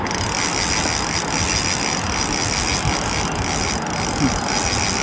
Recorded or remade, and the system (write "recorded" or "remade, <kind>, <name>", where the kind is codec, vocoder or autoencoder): recorded